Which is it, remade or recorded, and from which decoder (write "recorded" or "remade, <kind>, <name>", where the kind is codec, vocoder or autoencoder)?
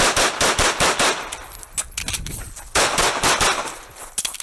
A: recorded